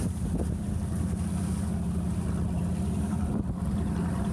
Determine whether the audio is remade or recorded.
recorded